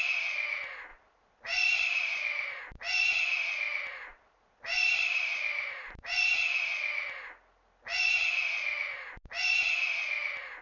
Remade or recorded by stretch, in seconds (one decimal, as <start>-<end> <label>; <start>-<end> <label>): 0.0-0.9 recorded; 0.9-2.6 remade; 2.6-4.1 recorded; 4.1-6.2 remade; 6.2-10.6 recorded